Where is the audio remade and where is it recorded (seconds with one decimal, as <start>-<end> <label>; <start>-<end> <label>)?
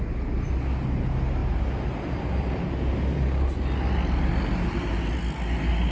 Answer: 0.0-5.9 recorded